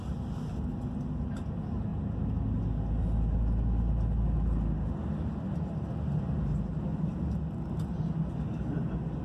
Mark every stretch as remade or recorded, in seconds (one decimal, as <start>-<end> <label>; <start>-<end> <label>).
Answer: 0.0-9.2 recorded